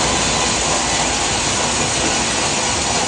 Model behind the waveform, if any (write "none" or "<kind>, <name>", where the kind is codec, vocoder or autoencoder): none